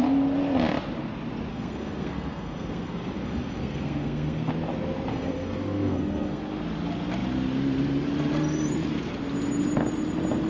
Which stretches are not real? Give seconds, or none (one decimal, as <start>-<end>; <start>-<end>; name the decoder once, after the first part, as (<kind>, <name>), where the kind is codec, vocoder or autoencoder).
1.5-4.5 (codec, SNAC); 5.1-6.4

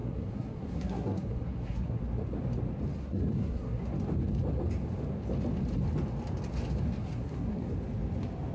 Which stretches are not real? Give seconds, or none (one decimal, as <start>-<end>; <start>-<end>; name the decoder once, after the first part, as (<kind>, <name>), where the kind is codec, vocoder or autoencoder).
0.0-2.0 (codec, SNAC); 3.0-3.8; 7.0-7.7

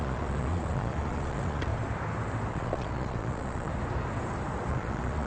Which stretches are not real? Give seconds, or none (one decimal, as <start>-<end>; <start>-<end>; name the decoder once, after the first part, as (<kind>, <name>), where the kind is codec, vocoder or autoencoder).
0.0-1.7 (vocoder, Vocos); 2.5-3.7; 4.7-5.3